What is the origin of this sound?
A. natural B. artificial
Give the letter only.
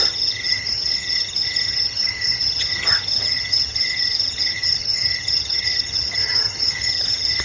B